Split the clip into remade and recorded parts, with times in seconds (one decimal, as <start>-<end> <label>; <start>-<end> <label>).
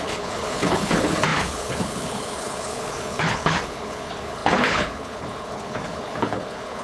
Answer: 0.0-6.8 remade